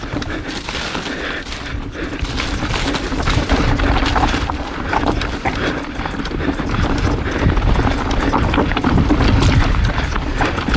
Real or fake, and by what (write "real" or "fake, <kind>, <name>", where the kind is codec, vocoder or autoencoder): fake, vocoder, BigVGAN v2